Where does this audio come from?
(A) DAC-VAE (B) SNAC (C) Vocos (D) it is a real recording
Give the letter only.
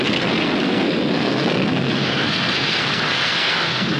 B